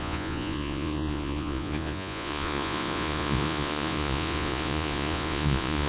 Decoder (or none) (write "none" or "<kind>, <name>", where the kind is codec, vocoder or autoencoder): vocoder, Vocos